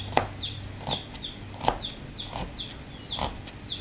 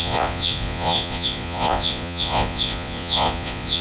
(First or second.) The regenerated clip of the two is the second